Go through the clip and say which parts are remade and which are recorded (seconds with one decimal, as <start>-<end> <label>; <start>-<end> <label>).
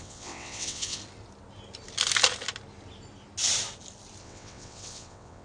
0.0-1.0 remade; 1.0-4.2 recorded; 4.2-5.4 remade